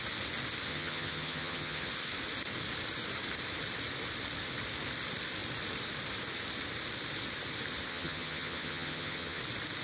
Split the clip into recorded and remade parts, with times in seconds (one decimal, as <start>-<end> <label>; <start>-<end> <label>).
0.0-0.7 recorded; 0.7-1.9 remade; 1.9-7.9 recorded; 7.9-9.4 remade; 9.4-9.8 recorded